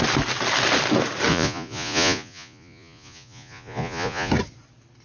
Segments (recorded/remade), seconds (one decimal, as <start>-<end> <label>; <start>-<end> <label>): 0.0-1.3 recorded; 1.3-4.3 remade; 4.3-5.0 recorded